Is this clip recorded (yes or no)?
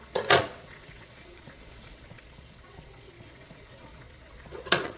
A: no